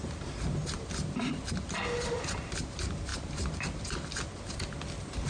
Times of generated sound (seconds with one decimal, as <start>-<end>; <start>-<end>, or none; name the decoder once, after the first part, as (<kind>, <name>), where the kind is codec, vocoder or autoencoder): none